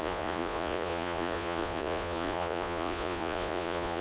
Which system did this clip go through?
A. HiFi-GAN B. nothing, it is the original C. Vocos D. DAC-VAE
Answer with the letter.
C